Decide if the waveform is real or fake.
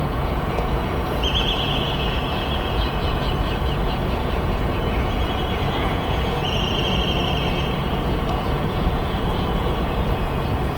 fake